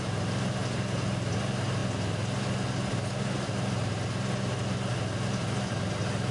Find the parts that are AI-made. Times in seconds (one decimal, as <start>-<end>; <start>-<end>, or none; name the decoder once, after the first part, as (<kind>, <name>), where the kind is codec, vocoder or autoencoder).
none